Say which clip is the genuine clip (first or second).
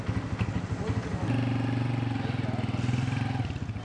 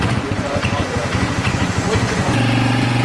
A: first